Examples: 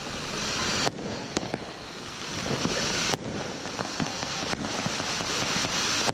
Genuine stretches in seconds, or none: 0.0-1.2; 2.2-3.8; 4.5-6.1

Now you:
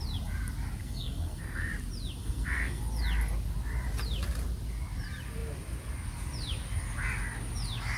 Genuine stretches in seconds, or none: 0.0-0.8; 1.7-2.2; 2.8-8.0

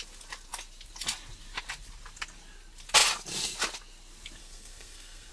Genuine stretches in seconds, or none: 0.0-4.4